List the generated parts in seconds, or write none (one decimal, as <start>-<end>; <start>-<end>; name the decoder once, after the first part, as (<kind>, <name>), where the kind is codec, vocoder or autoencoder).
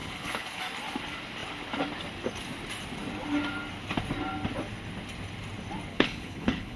0.0-0.6 (codec, HILCodec); 5.9-6.8